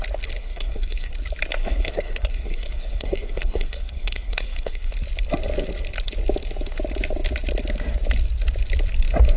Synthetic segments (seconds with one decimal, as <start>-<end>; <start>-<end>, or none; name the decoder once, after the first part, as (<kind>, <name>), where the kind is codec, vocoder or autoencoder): 0.4-1.1 (codec, SNAC); 1.6-4.9